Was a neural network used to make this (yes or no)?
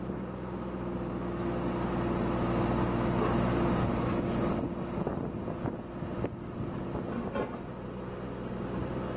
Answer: no